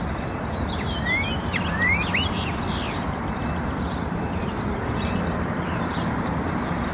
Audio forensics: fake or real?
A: fake